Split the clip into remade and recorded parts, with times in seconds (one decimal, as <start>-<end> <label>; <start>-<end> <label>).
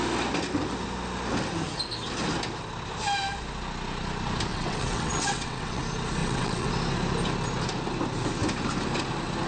0.0-4.5 recorded; 4.5-5.8 remade; 5.8-6.2 recorded; 6.2-6.7 remade; 6.7-9.5 recorded